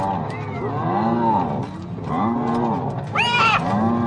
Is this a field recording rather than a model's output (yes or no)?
yes